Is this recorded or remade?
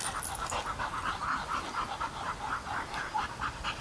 recorded